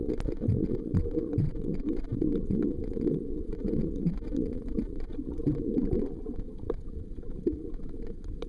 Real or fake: fake